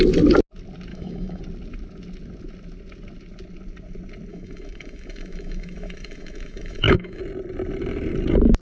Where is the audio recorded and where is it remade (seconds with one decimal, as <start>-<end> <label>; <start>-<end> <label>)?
0.0-0.9 recorded; 0.9-1.4 remade; 1.4-4.3 recorded; 4.3-7.2 remade; 7.2-8.6 recorded